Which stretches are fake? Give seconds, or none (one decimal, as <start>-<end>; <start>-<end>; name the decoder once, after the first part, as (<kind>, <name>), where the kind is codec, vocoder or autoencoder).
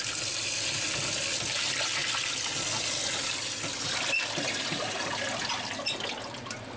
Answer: none